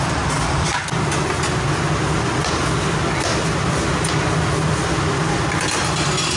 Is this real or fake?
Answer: real